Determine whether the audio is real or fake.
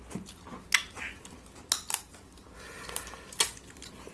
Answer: real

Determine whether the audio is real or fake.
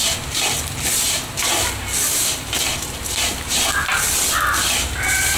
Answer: real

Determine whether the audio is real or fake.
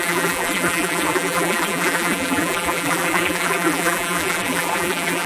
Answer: fake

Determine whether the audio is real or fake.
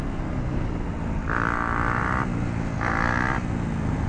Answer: real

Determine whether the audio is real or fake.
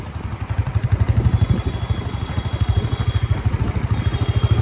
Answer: fake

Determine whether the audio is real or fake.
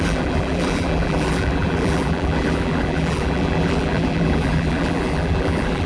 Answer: fake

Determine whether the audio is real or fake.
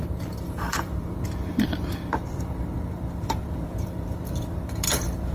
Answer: fake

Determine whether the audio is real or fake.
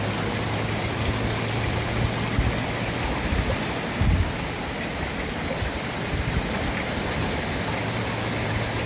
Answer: real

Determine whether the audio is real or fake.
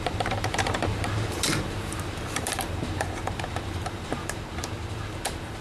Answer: fake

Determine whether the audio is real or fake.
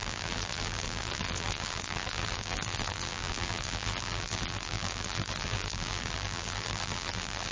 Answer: fake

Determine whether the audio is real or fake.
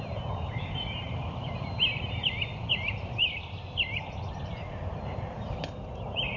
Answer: fake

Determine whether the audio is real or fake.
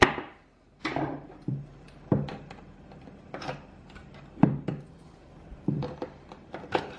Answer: fake